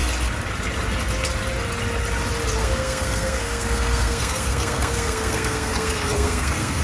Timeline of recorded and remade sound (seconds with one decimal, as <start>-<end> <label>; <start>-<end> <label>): 0.0-2.6 recorded; 2.6-6.8 remade